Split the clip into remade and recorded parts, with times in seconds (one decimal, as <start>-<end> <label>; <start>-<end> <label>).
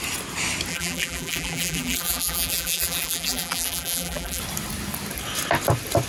0.0-0.7 recorded; 0.7-4.4 remade; 4.4-6.1 recorded